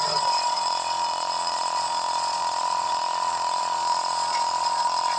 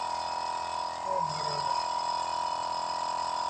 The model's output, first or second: first